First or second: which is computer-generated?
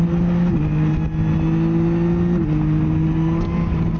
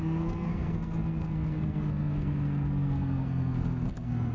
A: second